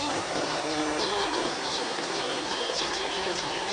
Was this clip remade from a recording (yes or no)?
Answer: yes